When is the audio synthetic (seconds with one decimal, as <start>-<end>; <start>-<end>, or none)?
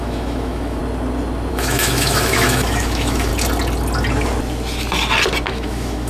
0.0-0.8; 1.5-3.3; 5.5-6.1